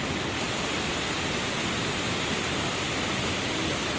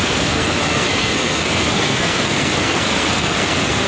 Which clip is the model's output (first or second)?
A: second